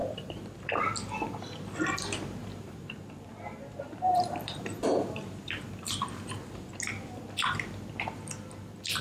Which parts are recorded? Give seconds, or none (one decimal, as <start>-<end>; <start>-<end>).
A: 0.9-2.4; 6.7-9.0